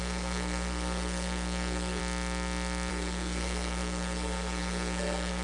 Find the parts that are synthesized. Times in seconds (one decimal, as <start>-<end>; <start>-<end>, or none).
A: 0.0-2.0; 2.9-5.4